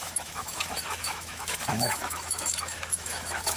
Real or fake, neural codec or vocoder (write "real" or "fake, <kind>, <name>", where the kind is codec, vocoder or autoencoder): fake, autoencoder, DAC-VAE